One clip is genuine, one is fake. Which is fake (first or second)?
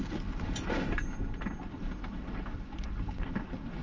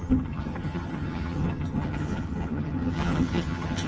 second